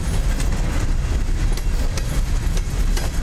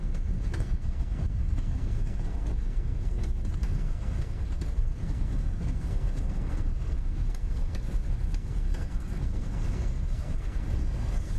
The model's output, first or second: second